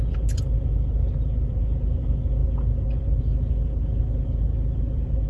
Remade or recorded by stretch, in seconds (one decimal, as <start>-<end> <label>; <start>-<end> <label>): 0.0-5.3 recorded